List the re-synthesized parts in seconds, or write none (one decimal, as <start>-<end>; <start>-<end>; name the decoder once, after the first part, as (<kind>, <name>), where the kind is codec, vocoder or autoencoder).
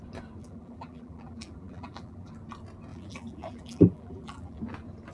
0.4-2.3 (vocoder, BigVGAN v2); 2.9-4.6